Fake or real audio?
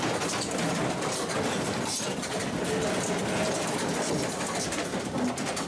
real